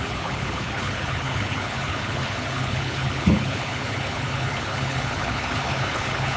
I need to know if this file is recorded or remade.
remade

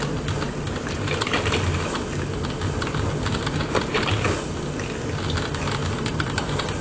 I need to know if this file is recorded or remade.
recorded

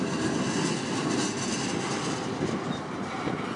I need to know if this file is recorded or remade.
recorded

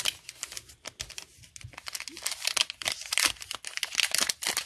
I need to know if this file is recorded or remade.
recorded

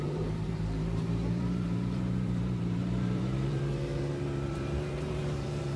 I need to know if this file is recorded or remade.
remade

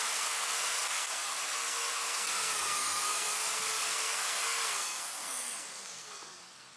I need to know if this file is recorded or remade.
remade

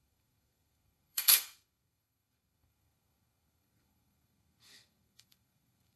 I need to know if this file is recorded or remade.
remade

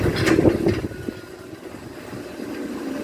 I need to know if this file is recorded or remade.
recorded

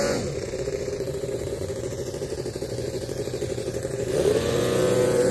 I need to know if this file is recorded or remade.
remade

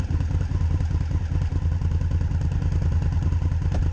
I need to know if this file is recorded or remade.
recorded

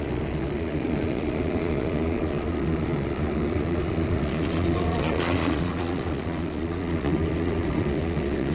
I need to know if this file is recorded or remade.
remade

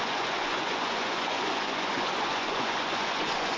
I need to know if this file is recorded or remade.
remade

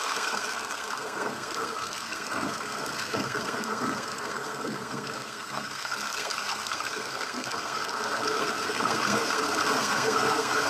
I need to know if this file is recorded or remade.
remade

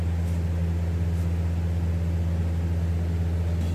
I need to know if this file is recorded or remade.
recorded